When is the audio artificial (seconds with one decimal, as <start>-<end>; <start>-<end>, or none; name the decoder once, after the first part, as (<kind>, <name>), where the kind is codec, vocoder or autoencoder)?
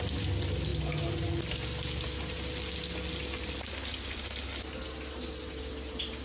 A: none